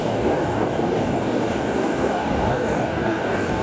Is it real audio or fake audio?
fake